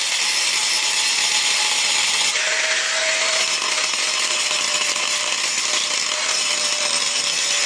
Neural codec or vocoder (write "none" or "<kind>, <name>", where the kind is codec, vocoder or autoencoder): none